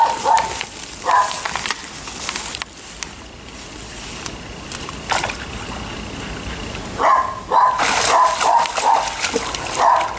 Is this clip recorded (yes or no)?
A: yes